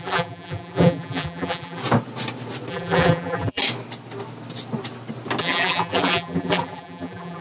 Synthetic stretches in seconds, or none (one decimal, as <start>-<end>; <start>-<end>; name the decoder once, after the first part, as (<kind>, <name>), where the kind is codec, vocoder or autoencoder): 0.0-1.8 (vocoder, BigVGAN v2); 2.7-3.6; 5.4-7.4